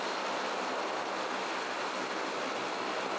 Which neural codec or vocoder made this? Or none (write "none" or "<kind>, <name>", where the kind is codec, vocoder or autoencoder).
none